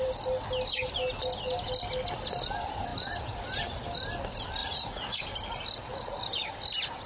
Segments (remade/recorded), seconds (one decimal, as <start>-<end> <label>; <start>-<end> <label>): 0.0-4.6 recorded; 4.6-5.2 remade; 5.2-7.1 recorded

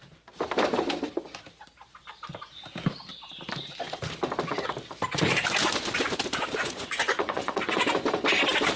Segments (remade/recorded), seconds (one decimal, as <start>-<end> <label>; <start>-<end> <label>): 0.0-6.5 recorded; 6.5-7.8 remade; 7.8-8.8 recorded

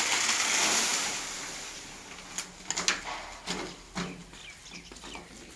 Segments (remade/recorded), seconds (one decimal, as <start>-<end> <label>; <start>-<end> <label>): 0.0-5.6 recorded